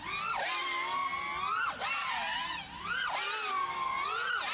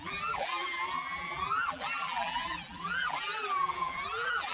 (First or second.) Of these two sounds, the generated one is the second